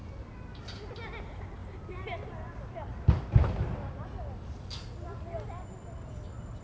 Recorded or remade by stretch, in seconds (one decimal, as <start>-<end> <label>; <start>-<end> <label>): 0.0-6.6 recorded